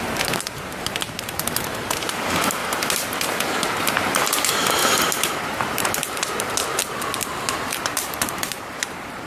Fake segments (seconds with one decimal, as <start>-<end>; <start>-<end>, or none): 0.0-2.6; 3.8-6.8; 7.6-9.3